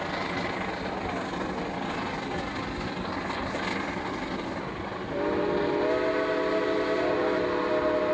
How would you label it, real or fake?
real